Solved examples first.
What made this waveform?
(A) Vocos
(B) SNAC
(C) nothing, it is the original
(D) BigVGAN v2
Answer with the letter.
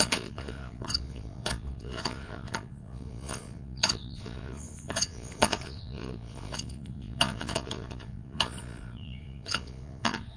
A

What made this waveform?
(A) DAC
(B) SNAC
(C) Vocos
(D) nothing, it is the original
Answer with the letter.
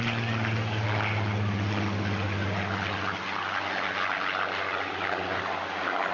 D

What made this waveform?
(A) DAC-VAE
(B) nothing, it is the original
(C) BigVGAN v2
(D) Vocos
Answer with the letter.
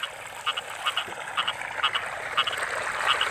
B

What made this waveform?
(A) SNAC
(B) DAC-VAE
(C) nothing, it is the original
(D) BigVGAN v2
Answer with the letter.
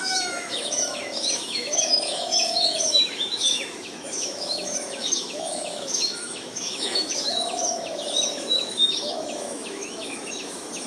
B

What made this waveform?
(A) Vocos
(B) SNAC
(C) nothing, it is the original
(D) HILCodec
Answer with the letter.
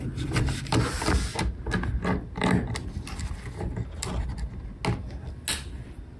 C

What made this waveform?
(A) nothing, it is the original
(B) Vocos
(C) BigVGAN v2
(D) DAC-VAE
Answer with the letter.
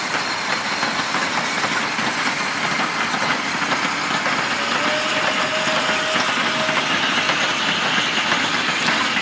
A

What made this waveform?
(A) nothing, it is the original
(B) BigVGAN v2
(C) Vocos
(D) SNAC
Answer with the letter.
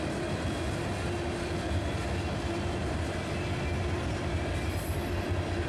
A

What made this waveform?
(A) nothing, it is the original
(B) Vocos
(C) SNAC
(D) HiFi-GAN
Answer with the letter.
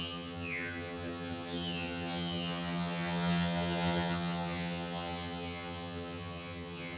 D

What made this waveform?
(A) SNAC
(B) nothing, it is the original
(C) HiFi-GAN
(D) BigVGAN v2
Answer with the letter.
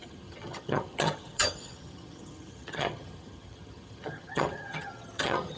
C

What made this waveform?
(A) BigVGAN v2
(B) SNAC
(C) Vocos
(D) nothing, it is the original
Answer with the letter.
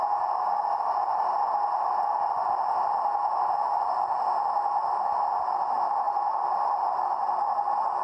D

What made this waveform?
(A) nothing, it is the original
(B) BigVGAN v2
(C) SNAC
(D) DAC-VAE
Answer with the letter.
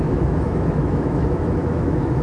D